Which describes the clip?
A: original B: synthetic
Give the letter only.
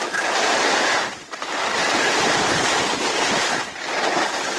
B